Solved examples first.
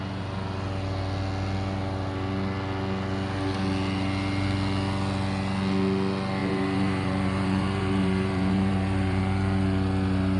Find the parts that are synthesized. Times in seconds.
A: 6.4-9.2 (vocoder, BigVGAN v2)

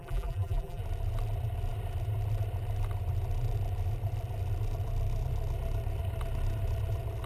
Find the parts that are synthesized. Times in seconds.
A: 0.0-0.8 (vocoder, BigVGAN v2)

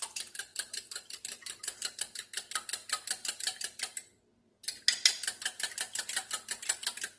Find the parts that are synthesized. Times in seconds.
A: 0.5-2.0 (vocoder, BigVGAN v2)

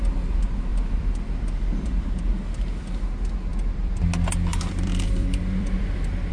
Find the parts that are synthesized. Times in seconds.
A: 0.7-2.2 (vocoder, BigVGAN v2); 3.5-4.0; 4.5-6.3

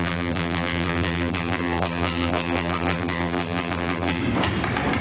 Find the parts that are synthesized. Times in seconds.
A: 0.0-4.2 (vocoder, BigVGAN v2)

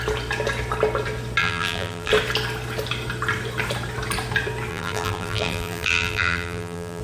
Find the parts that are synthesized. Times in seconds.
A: 1.4-2.1 (vocoder, BigVGAN v2); 4.7-7.0

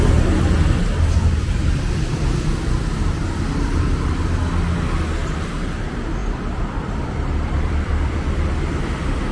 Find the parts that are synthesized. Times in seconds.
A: 6.2-8.5 (vocoder, BigVGAN v2)